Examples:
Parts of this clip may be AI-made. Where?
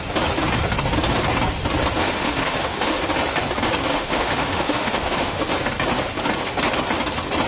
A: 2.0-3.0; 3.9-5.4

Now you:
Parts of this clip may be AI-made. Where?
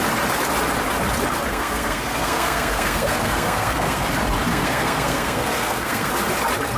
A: 1.5-4.1; 4.5-6.1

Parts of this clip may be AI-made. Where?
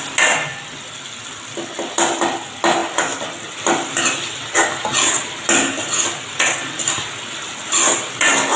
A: none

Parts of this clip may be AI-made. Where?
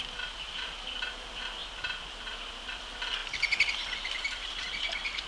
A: none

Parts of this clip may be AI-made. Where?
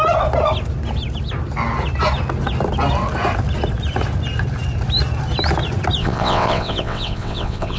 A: 6.0-7.8